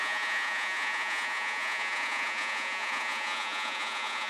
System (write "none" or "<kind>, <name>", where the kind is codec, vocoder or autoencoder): vocoder, Vocos